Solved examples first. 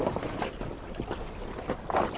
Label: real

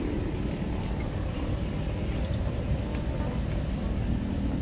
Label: real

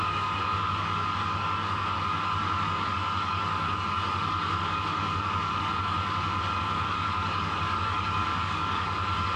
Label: fake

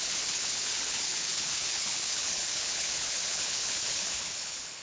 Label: fake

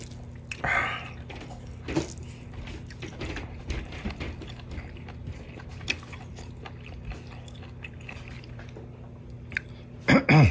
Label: real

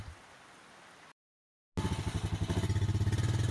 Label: real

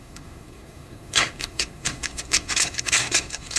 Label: fake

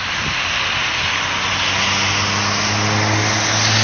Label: real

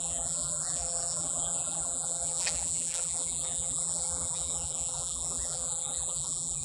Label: fake